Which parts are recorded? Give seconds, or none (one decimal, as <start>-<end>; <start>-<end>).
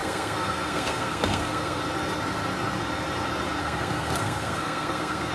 1.8-3.6